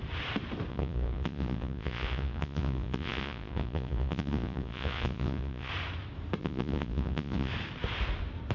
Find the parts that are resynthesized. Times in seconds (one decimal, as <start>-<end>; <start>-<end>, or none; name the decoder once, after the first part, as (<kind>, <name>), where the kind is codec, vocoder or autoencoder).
0.7-5.7 (vocoder, Vocos); 6.4-7.5